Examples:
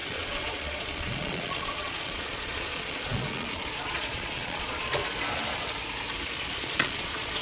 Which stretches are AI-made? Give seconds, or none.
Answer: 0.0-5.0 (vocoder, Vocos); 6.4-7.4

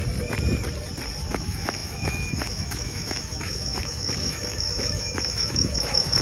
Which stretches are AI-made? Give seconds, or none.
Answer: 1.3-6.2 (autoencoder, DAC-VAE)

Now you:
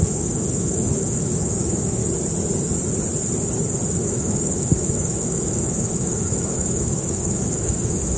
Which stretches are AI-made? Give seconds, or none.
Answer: 0.0-2.0 (autoencoder, DAC-VAE); 4.0-8.2